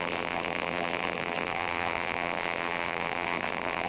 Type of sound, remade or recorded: remade